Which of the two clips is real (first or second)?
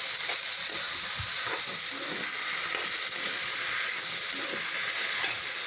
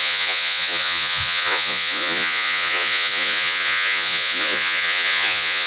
first